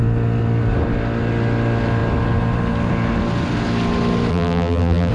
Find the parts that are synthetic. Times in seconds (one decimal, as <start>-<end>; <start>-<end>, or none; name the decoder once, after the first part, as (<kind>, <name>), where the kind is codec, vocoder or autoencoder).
4.3-5.1 (vocoder, BigVGAN v2)